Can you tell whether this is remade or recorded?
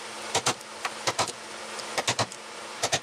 recorded